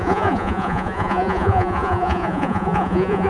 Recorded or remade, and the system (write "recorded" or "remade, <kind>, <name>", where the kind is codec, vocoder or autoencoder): remade, vocoder, Vocos